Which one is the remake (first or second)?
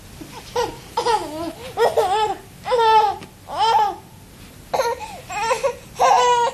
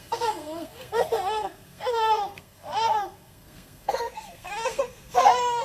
second